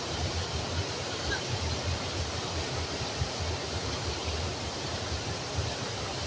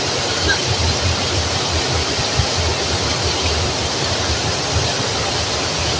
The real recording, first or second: second